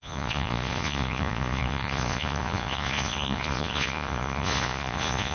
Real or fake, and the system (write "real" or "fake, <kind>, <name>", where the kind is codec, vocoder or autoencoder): fake, vocoder, Vocos